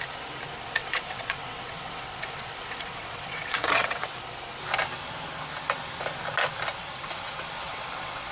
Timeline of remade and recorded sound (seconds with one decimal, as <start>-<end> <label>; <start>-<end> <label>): 0.0-0.8 recorded; 0.8-4.2 remade; 4.2-6.8 recorded; 6.8-8.3 remade